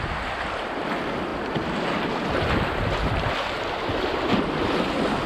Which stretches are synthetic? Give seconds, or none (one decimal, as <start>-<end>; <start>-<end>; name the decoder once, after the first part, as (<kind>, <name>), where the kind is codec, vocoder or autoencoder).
none